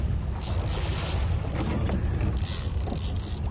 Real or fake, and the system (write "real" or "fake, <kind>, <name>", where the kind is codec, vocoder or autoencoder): real